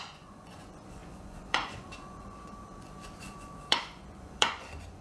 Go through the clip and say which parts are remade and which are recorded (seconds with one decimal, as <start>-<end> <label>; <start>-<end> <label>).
0.0-5.0 remade